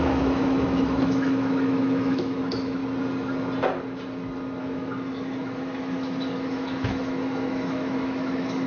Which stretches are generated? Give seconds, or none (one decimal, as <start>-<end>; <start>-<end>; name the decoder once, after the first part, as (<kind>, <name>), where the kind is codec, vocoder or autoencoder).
0.0-2.8 (autoencoder, DAC-VAE); 4.6-8.7